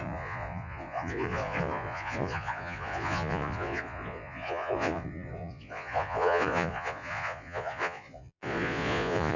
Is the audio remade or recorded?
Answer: remade